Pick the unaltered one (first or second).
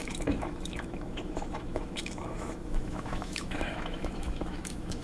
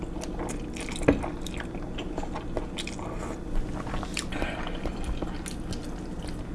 second